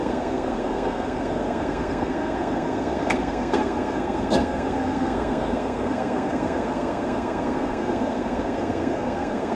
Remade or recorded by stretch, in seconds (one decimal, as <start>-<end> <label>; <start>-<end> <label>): 0.0-9.6 remade